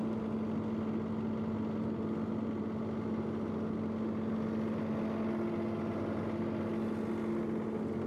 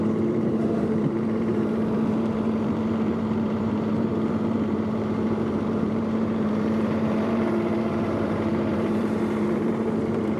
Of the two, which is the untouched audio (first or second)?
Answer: first